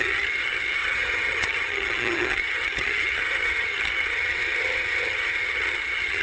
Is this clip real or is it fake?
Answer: fake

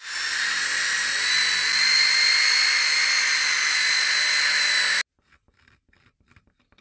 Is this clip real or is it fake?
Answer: real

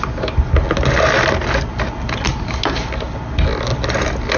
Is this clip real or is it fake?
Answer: real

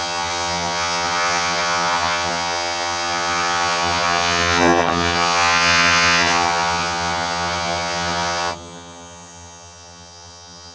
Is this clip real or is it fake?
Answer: fake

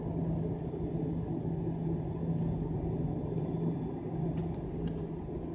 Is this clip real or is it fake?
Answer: real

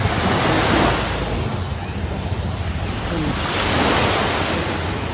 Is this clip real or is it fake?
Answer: real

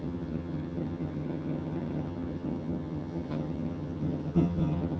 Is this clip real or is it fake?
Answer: fake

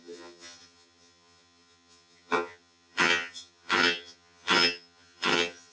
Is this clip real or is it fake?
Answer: fake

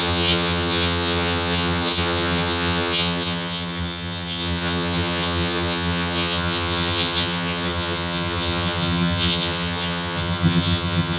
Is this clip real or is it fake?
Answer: fake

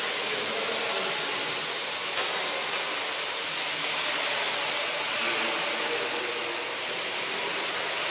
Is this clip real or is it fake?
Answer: real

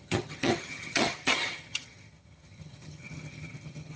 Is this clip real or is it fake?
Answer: fake